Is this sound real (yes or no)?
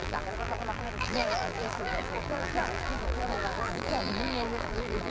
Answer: no